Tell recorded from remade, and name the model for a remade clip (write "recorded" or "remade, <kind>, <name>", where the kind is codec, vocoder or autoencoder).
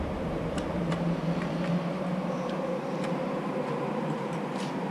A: remade, vocoder, BigVGAN v2